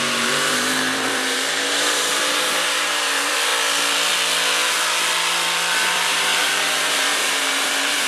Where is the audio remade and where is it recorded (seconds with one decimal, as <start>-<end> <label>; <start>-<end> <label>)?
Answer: 0.0-3.5 remade; 3.5-5.8 recorded; 5.8-8.1 remade